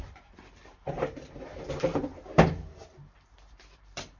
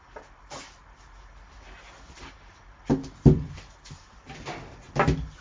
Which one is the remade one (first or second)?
first